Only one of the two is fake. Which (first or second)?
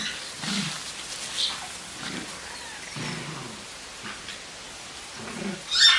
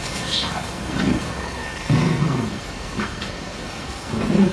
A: second